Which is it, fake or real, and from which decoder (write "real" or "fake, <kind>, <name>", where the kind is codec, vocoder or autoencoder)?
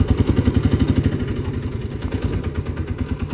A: real